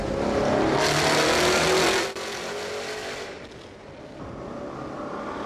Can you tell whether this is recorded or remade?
recorded